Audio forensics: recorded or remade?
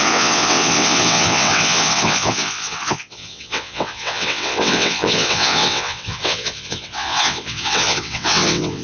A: remade